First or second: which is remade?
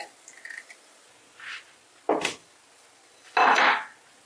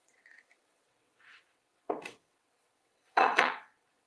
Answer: second